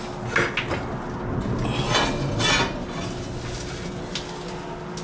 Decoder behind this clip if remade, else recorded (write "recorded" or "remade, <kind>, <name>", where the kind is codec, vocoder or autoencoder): recorded